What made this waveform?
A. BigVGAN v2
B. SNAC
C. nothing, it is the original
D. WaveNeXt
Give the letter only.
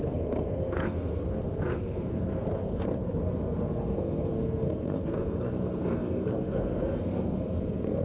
B